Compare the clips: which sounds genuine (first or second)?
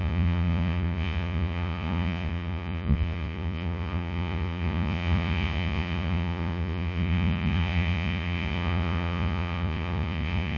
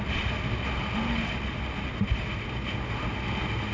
second